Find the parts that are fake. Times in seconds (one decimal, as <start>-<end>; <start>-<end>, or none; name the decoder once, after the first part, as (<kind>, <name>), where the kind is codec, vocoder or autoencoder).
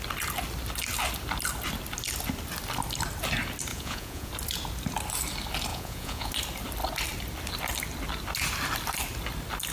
3.7-4.3 (vocoder, Vocos); 5.7-6.3